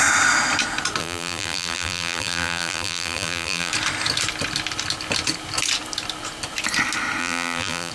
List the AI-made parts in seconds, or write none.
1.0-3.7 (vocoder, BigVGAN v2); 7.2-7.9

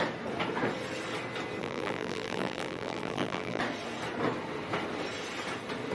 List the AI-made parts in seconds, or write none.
1.6-3.6 (vocoder, BigVGAN v2)

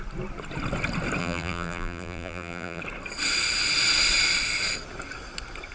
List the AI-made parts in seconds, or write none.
1.2-2.8 (vocoder, BigVGAN v2)

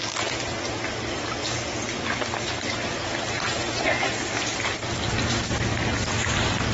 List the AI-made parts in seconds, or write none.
none

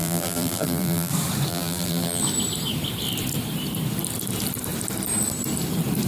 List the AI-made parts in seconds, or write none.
0.0-1.1 (vocoder, BigVGAN v2); 1.5-2.2

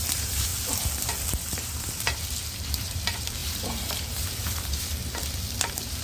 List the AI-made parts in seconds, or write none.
0.0-0.5 (vocoder, BigVGAN v2); 1.3-4.9